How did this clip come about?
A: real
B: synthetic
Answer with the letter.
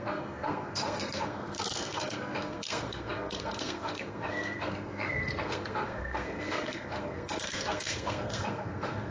B